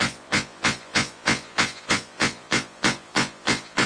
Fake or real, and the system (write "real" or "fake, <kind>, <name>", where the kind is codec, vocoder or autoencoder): fake, vocoder, Vocos